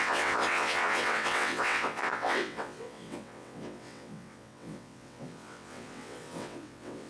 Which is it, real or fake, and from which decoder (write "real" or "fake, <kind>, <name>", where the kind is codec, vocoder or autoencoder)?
fake, vocoder, WaveNeXt